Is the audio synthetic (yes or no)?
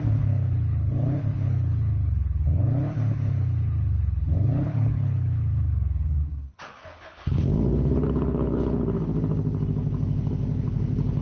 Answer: yes